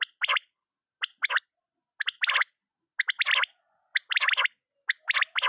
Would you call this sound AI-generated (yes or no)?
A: no